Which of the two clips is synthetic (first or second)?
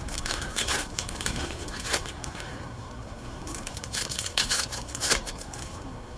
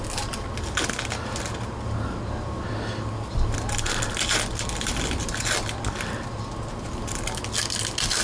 first